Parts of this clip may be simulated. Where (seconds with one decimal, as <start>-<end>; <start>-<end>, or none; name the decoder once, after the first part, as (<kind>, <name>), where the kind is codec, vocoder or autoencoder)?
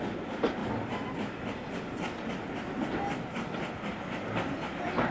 none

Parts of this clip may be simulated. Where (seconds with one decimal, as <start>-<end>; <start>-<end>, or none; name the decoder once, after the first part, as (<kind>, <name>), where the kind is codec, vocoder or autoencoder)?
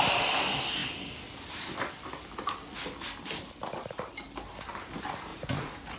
5.3-6.0 (vocoder, Vocos)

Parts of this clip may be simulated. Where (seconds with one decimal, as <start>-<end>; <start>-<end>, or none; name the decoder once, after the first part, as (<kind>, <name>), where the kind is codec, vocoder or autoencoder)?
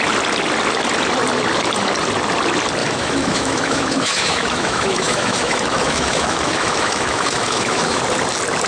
2.8-8.0 (autoencoder, DAC-VAE)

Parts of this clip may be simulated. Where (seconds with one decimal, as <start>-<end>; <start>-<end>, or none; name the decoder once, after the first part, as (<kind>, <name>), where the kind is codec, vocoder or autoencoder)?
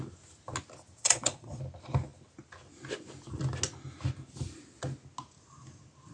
1.0-1.6 (vocoder, Vocos)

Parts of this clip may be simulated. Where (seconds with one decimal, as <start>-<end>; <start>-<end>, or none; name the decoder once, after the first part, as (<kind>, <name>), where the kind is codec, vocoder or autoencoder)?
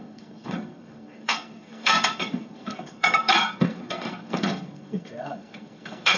0.0-6.2 (codec, SNAC)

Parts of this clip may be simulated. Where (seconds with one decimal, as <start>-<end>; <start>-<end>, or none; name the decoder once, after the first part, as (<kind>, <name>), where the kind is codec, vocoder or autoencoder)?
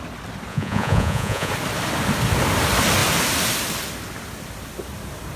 0.5-1.5 (vocoder, Vocos)